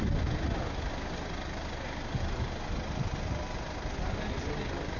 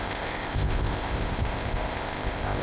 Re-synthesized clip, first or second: second